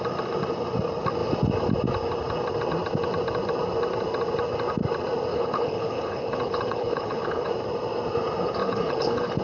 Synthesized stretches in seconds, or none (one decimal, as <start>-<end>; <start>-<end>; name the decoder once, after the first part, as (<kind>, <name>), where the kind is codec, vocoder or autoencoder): 5.3-7.5 (codec, HILCodec); 8.6-9.4